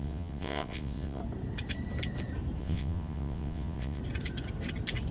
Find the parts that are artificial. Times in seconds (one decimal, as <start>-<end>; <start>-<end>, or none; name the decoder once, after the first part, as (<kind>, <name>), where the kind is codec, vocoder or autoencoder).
0.0-1.2 (vocoder, WaveNeXt); 2.6-4.0